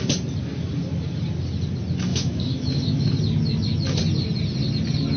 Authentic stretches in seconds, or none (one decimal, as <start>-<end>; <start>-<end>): 0.0-2.1; 3.1-5.2